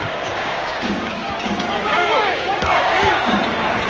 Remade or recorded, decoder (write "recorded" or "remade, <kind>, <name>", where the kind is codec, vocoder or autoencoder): remade, codec, DAC